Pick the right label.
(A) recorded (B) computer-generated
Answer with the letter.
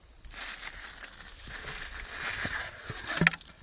A